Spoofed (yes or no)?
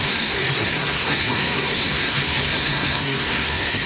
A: yes